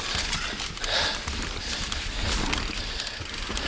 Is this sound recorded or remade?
recorded